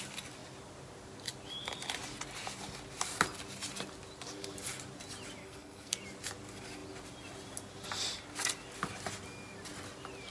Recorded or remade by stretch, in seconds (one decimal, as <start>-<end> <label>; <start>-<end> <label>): 0.0-5.4 recorded; 5.4-6.0 remade; 6.0-10.3 recorded